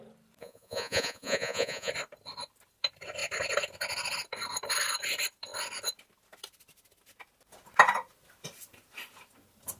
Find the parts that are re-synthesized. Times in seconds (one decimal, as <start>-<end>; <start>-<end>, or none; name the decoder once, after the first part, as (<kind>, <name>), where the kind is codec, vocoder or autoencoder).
0.4-1.9 (vocoder, Vocos)